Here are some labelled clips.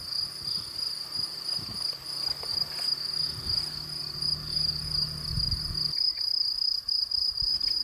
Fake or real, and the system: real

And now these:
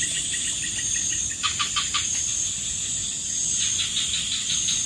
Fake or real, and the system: real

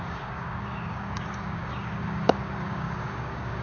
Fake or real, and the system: fake, codec, DAC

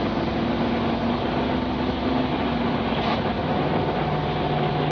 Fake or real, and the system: real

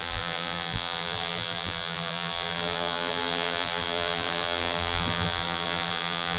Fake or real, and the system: fake, vocoder, BigVGAN v2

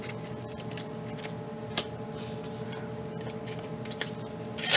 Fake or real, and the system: real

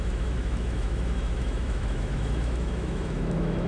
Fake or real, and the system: fake, autoencoder, DAC-VAE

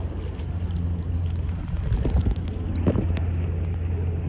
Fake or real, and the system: real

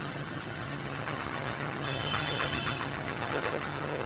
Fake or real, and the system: fake, vocoder, HiFi-GAN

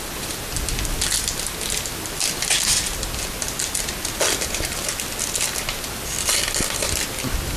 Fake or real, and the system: real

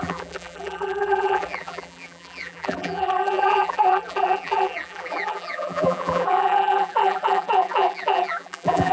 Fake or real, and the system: fake, vocoder, BigVGAN v2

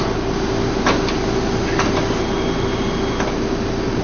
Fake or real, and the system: real